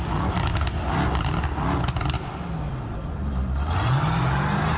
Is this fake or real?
real